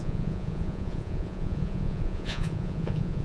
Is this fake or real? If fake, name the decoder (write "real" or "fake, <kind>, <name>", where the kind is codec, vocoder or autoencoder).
fake, vocoder, Vocos